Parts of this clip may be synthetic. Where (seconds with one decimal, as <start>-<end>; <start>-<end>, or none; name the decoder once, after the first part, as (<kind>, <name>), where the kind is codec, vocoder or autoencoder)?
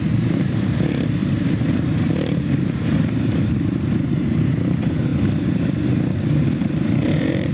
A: 0.0-7.5 (vocoder, BigVGAN v2)